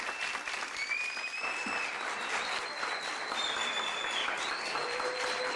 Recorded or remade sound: recorded